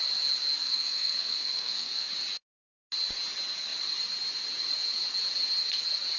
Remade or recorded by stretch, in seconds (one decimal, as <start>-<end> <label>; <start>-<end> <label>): 0.0-0.6 recorded; 0.6-2.1 remade; 2.1-6.2 recorded